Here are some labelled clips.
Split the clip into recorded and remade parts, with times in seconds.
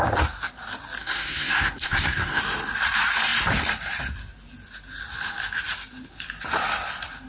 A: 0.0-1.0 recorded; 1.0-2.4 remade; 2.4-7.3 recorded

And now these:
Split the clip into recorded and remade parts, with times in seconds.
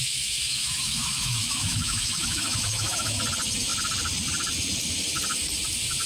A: 0.0-3.2 remade; 3.2-6.1 recorded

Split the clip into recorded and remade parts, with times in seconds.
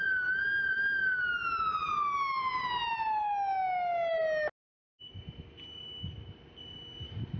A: 0.0-7.4 recorded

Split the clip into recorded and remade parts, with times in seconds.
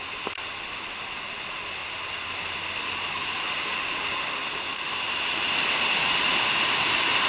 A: 0.0-7.3 recorded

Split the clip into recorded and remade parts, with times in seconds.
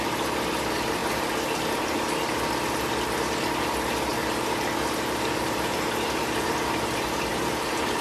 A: 0.0-4.1 recorded; 4.1-6.5 remade; 6.5-7.3 recorded; 7.3-8.0 remade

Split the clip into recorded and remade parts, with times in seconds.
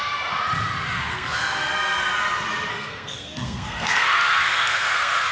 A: 0.0-1.1 recorded; 1.1-2.0 remade; 2.0-2.7 recorded; 2.7-5.3 remade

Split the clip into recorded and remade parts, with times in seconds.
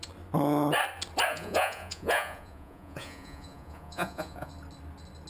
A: 0.0-1.3 recorded; 1.3-4.5 remade; 4.5-5.3 recorded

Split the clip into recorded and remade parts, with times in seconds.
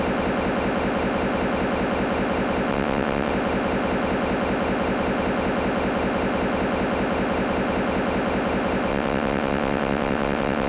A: 0.0-2.7 recorded; 2.7-3.3 remade; 3.3-8.9 recorded; 8.9-10.7 remade